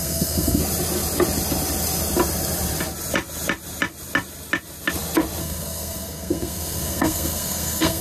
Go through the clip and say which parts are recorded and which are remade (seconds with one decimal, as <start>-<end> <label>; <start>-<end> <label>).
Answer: 0.0-0.6 remade; 0.6-5.4 recorded; 5.4-8.0 remade